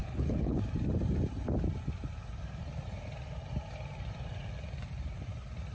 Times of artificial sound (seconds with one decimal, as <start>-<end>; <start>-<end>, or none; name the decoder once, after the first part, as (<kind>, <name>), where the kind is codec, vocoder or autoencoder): 0.0-0.6 (codec, HILCodec)